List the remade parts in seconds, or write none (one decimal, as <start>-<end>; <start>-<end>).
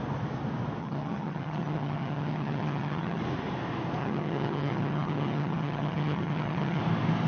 0.8-3.2; 4.0-6.8